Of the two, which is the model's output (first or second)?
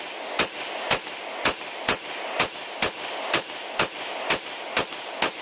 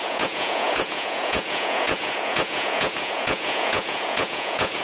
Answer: second